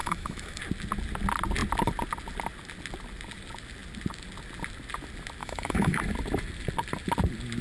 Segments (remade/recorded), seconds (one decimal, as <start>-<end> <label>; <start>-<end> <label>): 0.0-0.6 remade; 0.6-5.4 recorded; 5.4-6.0 remade; 6.0-7.6 recorded